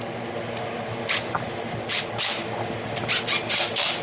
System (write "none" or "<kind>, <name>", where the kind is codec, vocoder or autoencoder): none